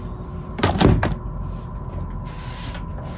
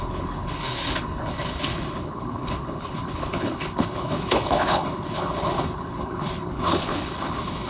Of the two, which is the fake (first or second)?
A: second